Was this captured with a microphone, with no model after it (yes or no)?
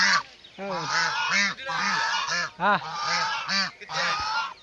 yes